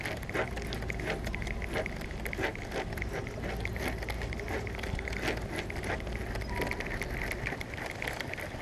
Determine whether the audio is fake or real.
real